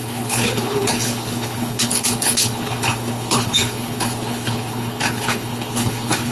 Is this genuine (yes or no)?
no